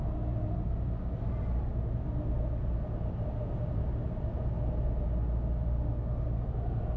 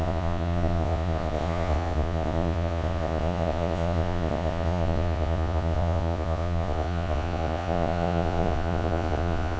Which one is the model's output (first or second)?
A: second